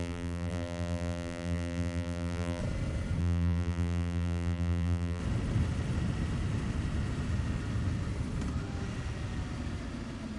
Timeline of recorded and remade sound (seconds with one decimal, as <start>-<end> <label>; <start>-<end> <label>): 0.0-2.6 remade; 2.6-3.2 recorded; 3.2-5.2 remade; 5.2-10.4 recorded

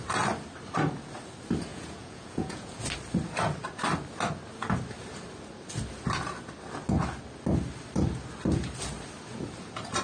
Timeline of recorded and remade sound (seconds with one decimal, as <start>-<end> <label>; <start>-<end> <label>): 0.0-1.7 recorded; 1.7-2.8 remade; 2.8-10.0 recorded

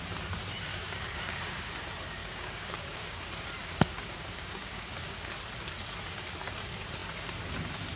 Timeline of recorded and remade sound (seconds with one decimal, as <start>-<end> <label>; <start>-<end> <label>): 0.0-0.7 recorded; 0.7-1.7 remade; 1.7-2.2 recorded; 2.2-3.2 remade; 3.2-3.6 recorded; 3.6-5.3 remade; 5.3-8.0 recorded

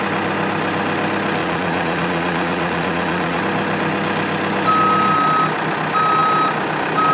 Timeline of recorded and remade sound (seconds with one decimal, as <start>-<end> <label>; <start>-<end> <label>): 0.0-1.4 recorded; 1.4-3.4 remade; 3.4-7.1 recorded